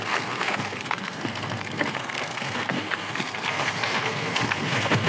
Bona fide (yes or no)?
no